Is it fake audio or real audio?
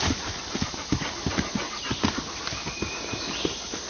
real